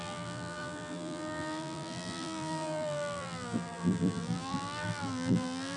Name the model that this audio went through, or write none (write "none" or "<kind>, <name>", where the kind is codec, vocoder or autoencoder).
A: vocoder, BigVGAN v2